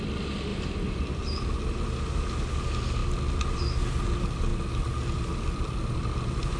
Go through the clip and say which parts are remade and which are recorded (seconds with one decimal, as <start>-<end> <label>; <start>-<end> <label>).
0.0-0.5 recorded; 0.5-1.2 remade; 1.2-6.6 recorded